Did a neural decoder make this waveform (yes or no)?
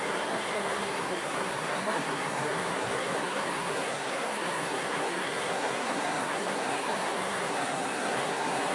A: yes